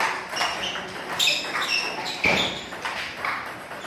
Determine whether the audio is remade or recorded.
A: recorded